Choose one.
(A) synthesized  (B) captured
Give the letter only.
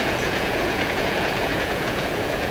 A